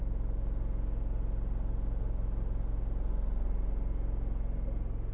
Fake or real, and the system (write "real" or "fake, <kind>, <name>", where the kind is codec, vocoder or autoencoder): real